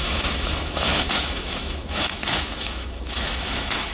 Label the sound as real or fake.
fake